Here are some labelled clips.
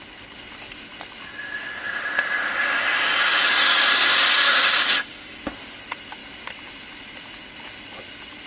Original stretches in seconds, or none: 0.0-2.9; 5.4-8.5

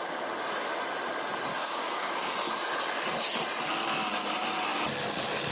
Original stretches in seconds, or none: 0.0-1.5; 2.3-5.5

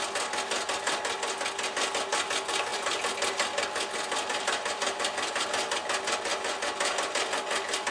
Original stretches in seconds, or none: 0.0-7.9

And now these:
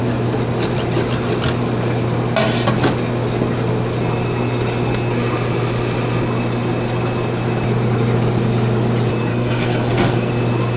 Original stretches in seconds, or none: 0.0-9.3; 10.3-10.8

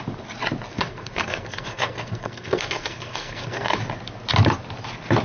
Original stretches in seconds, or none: 0.0-0.7; 3.8-5.2

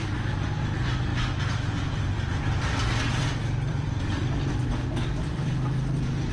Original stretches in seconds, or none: 0.0-1.1; 2.9-3.4; 4.7-6.3